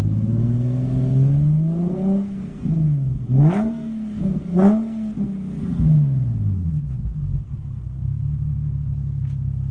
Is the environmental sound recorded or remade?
remade